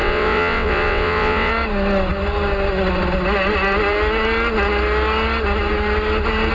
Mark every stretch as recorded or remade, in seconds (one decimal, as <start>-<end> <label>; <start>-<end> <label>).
0.0-1.5 remade; 1.5-6.5 recorded